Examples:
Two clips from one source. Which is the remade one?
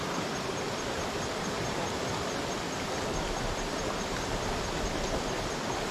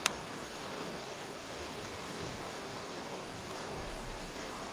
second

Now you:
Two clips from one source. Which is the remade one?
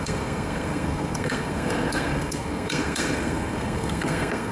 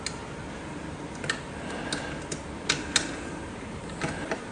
first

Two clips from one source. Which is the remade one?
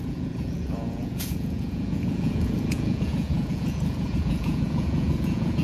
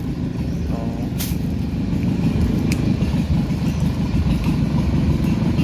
first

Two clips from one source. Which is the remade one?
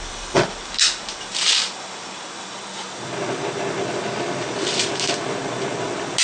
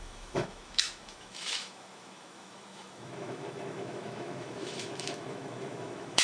second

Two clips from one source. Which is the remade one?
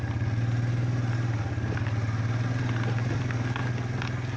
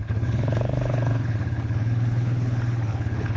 second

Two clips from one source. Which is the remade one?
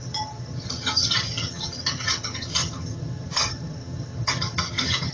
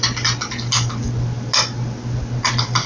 first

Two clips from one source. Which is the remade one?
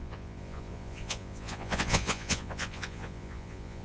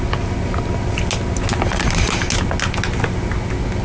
first